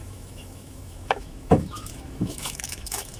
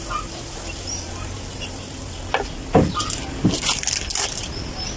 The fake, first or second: first